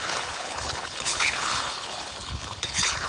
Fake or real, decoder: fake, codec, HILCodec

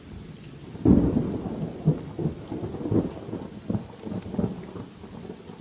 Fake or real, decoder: real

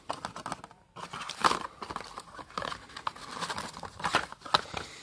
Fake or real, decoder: real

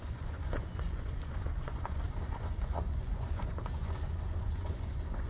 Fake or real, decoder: fake, vocoder, Vocos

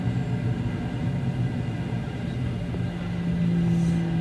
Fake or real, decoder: real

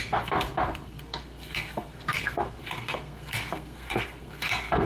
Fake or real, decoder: fake, codec, SNAC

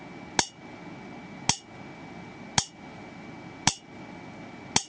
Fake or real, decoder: real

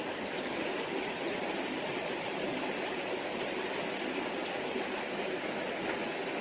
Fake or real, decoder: real